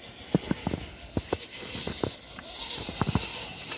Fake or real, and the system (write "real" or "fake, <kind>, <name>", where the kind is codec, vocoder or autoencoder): real